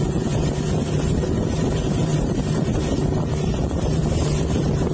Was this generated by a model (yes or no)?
yes